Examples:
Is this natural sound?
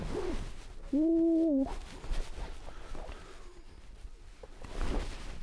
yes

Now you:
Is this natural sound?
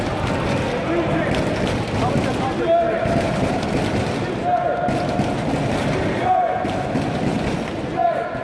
yes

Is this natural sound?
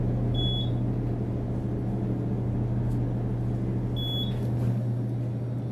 yes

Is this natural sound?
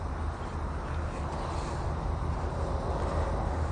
yes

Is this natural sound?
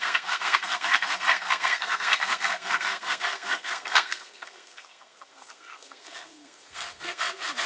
no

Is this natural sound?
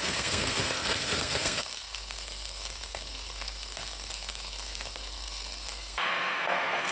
no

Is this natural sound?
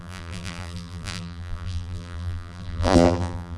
no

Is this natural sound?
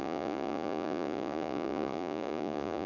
no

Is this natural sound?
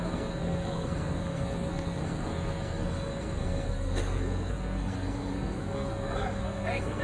no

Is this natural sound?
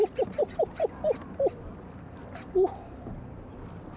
yes